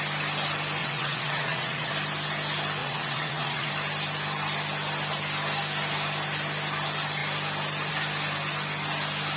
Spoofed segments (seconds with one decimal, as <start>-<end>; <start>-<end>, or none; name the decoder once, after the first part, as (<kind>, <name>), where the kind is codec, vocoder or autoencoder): 0.8-1.9 (vocoder, WaveNeXt); 2.8-3.7